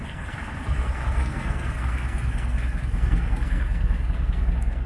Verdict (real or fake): fake